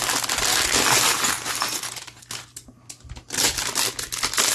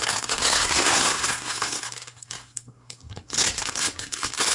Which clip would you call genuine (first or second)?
first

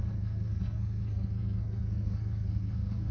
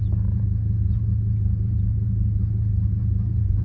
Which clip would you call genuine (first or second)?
second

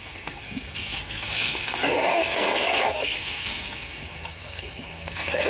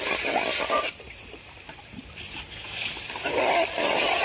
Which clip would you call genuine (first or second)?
second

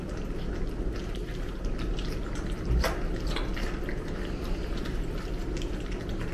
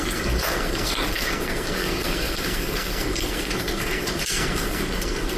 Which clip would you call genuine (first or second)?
first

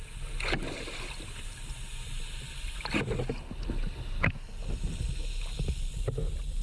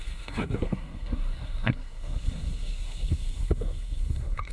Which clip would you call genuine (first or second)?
first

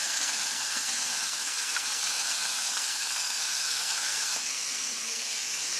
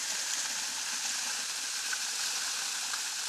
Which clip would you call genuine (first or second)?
second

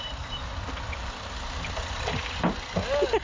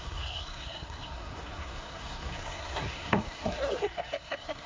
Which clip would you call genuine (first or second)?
first